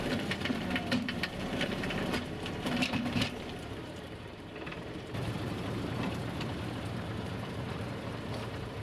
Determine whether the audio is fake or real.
fake